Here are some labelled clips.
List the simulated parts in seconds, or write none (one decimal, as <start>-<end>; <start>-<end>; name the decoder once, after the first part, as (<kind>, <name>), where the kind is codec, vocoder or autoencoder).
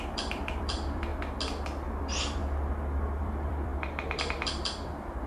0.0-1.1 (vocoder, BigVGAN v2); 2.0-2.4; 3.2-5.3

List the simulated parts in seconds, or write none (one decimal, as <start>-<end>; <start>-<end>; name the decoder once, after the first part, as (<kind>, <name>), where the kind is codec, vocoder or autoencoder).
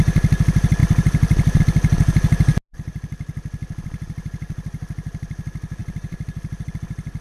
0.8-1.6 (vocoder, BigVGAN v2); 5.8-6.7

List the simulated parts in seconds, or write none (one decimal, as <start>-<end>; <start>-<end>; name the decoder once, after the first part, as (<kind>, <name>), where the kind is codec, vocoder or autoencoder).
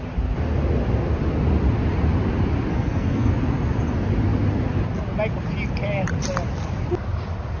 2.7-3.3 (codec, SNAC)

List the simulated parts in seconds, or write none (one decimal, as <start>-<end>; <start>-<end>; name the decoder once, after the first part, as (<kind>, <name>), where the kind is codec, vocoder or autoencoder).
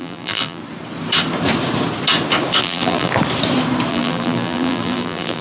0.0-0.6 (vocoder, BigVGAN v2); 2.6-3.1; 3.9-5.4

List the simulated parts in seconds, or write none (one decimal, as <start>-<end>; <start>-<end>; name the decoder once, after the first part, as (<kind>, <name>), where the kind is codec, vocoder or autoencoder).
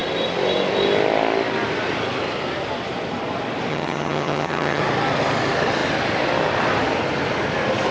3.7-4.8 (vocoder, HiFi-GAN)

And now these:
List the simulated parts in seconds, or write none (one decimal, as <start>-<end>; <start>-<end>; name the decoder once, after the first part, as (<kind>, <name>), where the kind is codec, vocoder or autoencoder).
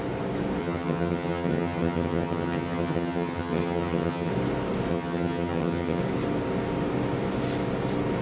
0.6-4.3 (vocoder, HiFi-GAN); 4.9-6.0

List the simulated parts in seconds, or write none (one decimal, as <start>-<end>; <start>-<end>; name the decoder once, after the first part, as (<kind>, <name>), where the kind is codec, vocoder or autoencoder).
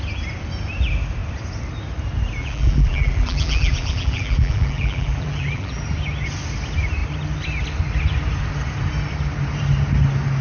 2.4-5.8 (vocoder, BigVGAN v2)